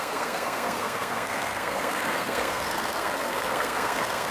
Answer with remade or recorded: remade